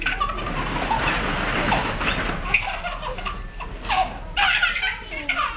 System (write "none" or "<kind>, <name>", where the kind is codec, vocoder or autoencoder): vocoder, BigVGAN v2